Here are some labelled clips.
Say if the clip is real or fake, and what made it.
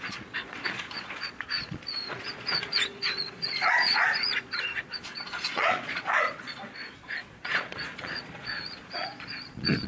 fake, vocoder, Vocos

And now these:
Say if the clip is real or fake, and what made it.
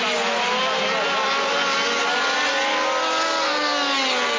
real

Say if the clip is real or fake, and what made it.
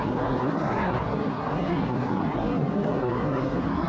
fake, codec, SNAC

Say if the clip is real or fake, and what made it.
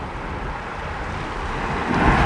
real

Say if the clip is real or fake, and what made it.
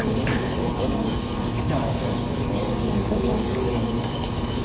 fake, codec, DAC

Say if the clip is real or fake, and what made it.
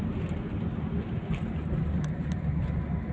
real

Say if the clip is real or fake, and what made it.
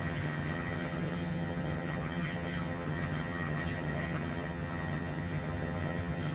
fake, vocoder, HiFi-GAN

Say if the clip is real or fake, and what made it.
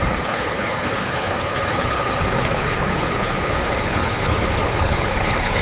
fake, codec, HILCodec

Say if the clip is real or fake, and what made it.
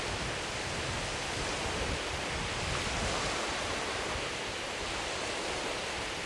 real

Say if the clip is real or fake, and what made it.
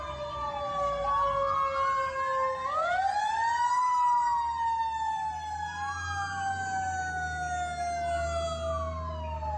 real